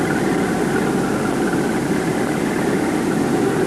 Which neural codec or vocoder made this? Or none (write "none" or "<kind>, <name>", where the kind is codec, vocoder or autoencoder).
none